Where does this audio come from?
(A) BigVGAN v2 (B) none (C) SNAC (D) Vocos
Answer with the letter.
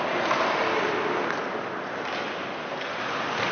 B